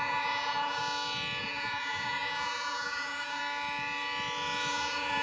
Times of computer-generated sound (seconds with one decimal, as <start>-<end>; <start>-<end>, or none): 0.0-0.8; 1.4-3.4; 4.7-5.2